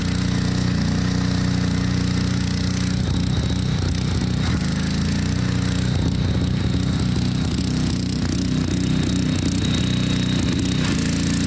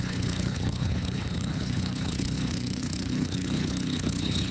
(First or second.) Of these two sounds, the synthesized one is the second